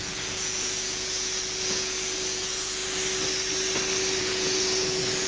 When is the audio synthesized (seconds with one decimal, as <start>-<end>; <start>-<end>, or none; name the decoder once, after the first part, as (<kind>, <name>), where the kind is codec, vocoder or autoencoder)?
0.0-2.8 (vocoder, Vocos); 4.2-5.3